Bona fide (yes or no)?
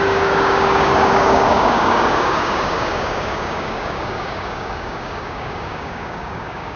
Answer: no